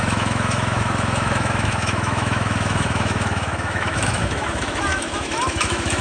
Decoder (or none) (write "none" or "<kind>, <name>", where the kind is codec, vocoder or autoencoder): autoencoder, DAC-VAE